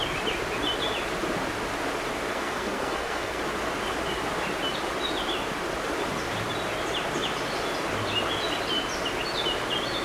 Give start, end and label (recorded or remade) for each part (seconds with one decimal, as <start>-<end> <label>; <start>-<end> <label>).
0.0-2.3 recorded; 2.3-3.4 remade; 3.4-10.0 recorded